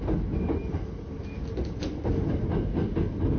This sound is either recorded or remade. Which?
recorded